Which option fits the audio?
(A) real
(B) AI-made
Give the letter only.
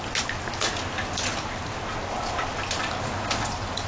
A